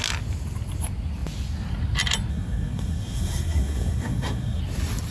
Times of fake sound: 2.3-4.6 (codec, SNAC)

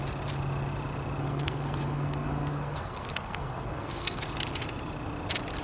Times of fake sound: 1.2-4.2 (codec, SNAC)

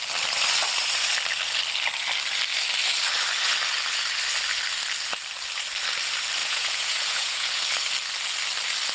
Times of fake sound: 6.4-7.6 (vocoder, Vocos)

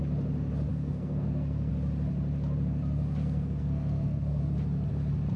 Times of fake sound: 0.7-1.7 (codec, SNAC); 3.2-4.4

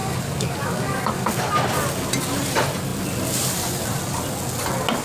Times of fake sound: 0.0-1.5 (codec, DAC)